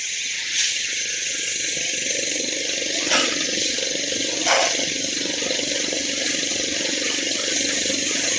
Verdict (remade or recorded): remade